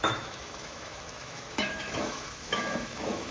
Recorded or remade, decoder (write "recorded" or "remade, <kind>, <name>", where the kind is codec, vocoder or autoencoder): remade, autoencoder, DAC-VAE